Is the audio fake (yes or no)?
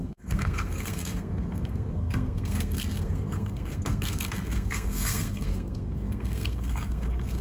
yes